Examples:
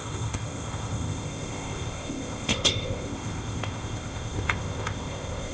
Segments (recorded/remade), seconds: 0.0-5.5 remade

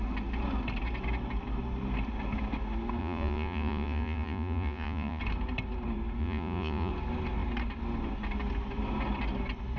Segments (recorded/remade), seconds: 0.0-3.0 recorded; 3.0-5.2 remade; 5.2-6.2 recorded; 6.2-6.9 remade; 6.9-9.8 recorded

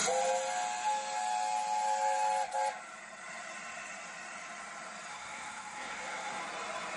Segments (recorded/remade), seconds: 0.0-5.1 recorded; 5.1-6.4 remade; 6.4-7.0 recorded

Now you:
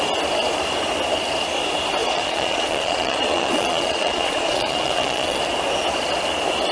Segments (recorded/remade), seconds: 0.0-2.0 recorded; 2.0-5.4 remade; 5.4-6.7 recorded